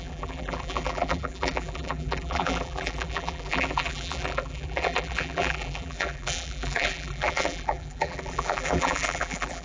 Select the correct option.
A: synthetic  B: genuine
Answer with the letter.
A